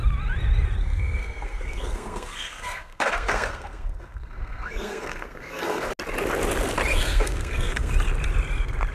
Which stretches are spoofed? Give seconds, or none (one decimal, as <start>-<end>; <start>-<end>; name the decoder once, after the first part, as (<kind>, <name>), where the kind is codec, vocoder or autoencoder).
0.8-5.9 (codec, SNAC); 6.9-7.9

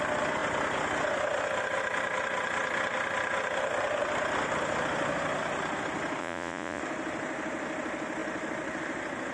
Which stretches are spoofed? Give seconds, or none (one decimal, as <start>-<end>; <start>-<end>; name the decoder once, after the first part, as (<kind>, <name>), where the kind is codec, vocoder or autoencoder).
6.2-6.8 (vocoder, Vocos)

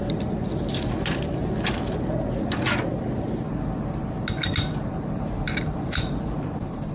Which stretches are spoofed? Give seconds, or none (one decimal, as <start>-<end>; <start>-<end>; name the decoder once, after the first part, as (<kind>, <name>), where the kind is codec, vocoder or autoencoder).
0.0-1.4 (vocoder, BigVGAN v2); 4.9-6.9